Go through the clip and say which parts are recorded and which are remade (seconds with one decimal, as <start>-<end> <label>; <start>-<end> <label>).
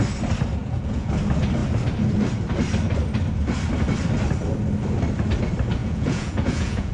0.0-0.6 recorded; 0.6-1.1 remade; 1.1-5.8 recorded; 5.8-6.9 remade